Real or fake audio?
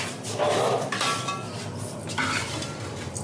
real